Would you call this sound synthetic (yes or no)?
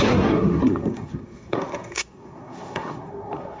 yes